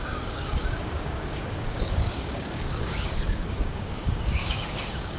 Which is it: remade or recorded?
remade